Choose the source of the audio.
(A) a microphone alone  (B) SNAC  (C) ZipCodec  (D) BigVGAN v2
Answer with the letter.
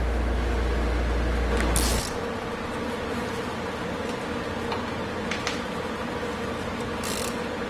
A